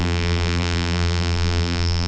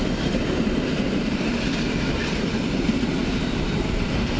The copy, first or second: first